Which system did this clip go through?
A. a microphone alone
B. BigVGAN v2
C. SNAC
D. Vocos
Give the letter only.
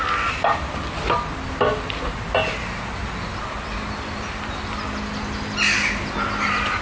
A